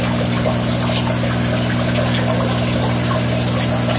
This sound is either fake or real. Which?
real